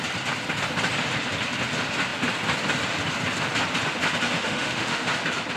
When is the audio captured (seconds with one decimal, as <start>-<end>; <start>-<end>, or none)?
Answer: 0.0-4.3; 5.1-5.6

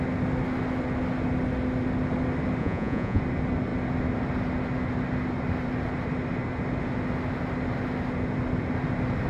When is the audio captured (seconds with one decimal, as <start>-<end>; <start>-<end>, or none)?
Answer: 0.0-2.6; 3.2-9.3

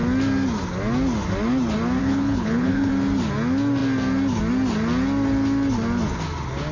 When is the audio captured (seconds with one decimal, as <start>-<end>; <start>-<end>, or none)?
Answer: 0.0-2.0; 2.9-6.7